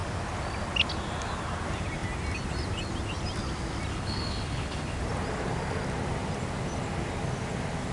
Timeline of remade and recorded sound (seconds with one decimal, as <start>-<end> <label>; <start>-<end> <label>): 0.0-3.9 recorded; 3.9-5.0 remade; 5.0-7.9 recorded